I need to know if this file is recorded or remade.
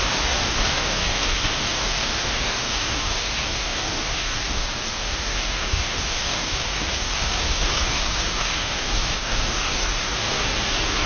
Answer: remade